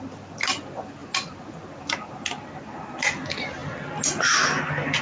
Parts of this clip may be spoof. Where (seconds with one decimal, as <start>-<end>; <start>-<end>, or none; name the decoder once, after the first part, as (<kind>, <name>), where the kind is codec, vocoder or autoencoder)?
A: none